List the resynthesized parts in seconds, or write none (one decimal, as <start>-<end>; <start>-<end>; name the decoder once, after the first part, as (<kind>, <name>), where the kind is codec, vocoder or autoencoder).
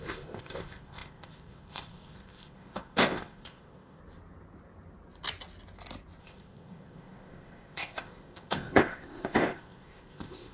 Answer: 0.0-4.0 (codec, ZipCodec); 6.2-10.5